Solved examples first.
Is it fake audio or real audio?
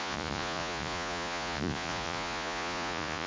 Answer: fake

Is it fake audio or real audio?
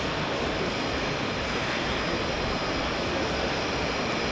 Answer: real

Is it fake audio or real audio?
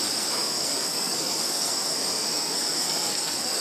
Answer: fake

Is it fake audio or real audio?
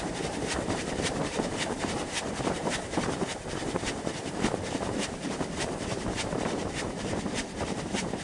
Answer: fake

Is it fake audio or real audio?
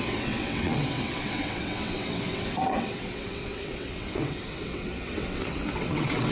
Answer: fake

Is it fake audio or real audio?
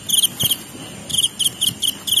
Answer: real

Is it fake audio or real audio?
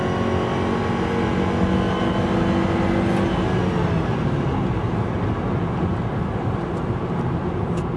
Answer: real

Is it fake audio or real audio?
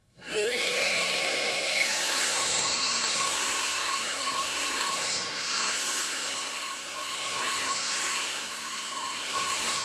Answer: fake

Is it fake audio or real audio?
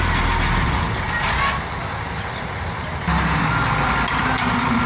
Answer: real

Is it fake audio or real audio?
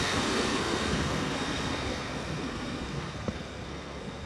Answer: fake